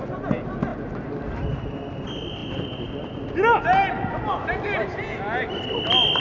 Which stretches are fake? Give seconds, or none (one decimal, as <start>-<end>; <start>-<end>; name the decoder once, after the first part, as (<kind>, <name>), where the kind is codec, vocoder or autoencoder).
none